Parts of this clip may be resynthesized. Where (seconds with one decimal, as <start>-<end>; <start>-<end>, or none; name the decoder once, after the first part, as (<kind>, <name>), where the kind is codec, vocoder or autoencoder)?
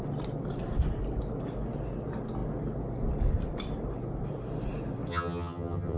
5.1-6.0 (vocoder, HiFi-GAN)